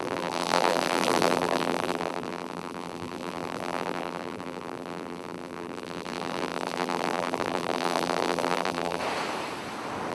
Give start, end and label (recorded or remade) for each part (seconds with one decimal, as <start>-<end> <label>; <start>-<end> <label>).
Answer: 0.0-9.0 remade; 9.0-10.1 recorded